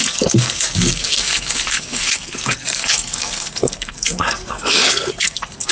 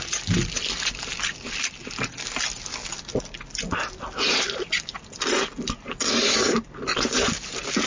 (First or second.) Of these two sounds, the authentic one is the second